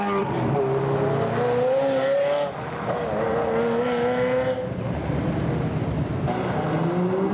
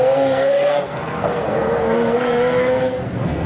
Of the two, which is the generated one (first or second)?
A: second